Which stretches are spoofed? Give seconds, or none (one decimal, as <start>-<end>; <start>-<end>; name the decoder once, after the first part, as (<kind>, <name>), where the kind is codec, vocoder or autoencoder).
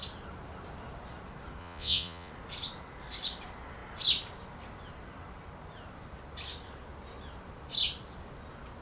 1.6-2.3 (vocoder, Vocos)